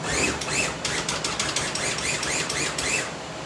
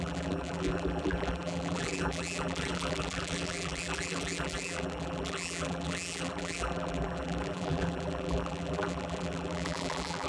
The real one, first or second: first